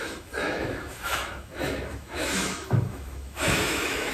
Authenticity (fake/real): fake